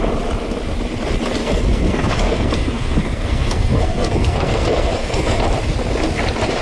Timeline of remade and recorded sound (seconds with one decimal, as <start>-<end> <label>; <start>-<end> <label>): 0.0-1.4 recorded; 1.4-5.4 remade; 5.4-6.6 recorded